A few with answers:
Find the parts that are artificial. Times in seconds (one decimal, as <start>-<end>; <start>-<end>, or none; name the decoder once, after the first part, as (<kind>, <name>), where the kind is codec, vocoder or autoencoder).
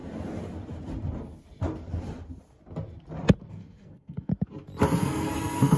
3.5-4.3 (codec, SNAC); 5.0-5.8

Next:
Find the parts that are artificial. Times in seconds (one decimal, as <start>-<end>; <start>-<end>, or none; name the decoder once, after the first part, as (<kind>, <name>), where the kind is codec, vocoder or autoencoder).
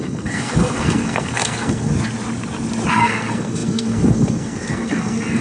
0.0-1.9 (codec, SNAC); 2.9-5.4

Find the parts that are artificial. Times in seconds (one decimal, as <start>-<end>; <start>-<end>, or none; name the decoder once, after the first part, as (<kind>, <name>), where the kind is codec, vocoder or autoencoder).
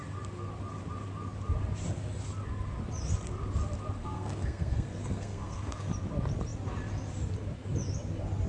4.0-5.9 (codec, SNAC)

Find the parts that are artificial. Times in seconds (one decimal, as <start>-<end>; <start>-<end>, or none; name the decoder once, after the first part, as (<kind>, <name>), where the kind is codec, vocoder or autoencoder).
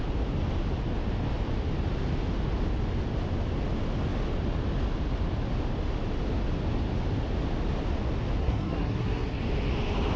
8.4-9.4 (codec, SNAC)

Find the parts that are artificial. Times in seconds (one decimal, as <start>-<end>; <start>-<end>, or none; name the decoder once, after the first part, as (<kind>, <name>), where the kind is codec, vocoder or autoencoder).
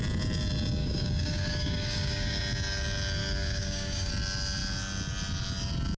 0.8-2.4 (codec, DAC); 3.2-4.1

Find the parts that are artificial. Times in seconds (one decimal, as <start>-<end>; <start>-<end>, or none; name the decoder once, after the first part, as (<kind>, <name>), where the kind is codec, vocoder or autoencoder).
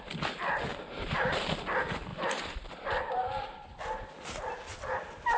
0.7-1.4 (vocoder, BigVGAN v2); 2.1-2.7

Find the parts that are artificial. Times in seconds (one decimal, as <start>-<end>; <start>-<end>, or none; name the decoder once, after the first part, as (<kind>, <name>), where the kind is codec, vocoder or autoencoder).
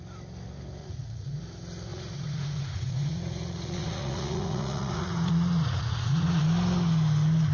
0.8-1.4 (vocoder, Vocos); 1.9-6.4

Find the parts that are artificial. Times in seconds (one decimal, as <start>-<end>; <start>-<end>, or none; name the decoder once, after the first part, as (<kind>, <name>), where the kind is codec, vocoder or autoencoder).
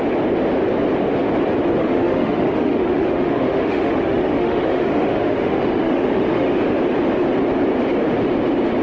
1.8-6.6 (autoencoder, DAC-VAE)